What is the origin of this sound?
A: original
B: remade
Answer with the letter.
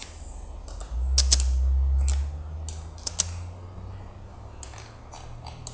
A